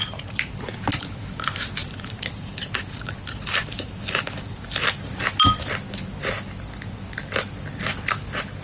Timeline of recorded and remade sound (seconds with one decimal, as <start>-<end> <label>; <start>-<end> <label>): 0.0-0.8 remade; 0.8-1.8 recorded; 1.8-4.2 remade; 4.2-8.6 recorded